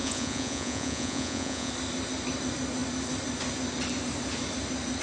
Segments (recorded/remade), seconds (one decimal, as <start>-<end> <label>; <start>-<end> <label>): 0.0-1.7 remade; 1.7-5.0 recorded